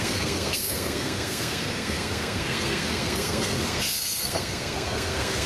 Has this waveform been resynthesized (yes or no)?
yes